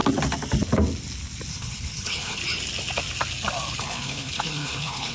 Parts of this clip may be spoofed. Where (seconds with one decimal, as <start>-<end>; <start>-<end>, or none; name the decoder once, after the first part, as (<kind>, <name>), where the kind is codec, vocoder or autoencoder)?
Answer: 1.5-2.4 (codec, HILCodec); 3.8-5.1